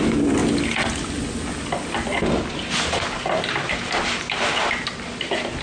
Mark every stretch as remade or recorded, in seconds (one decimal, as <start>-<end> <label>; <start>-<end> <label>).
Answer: 0.0-5.6 recorded